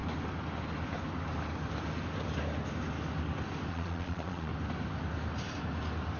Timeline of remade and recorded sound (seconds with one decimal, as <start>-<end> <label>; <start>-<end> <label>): 0.0-3.7 recorded; 3.7-4.5 remade; 4.5-6.2 recorded